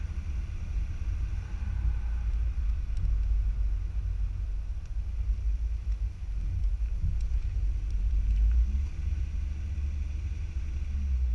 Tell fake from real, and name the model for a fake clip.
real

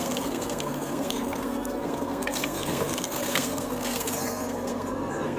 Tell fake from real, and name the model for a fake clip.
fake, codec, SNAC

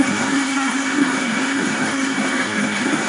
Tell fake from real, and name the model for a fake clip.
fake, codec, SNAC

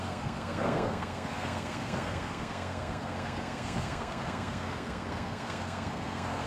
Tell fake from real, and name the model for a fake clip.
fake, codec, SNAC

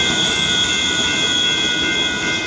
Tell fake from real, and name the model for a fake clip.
real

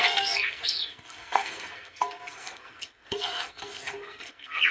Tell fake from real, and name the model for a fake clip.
fake, codec, SNAC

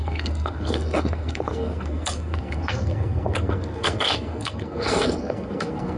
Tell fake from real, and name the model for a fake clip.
fake, codec, SNAC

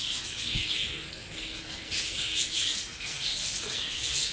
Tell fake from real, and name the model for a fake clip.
fake, codec, SNAC